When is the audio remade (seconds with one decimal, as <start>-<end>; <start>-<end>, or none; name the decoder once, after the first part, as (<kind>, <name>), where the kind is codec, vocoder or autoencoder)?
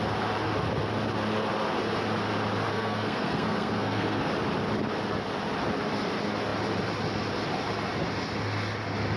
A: 2.7-4.3 (codec, SNAC)